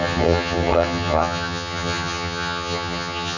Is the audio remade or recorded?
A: remade